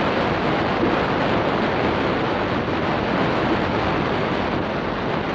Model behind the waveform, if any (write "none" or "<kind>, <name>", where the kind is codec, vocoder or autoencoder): none